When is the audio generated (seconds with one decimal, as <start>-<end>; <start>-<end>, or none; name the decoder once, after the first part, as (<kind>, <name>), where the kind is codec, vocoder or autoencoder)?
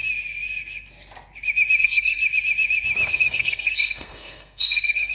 1.8-2.2 (codec, SNAC); 3.1-5.1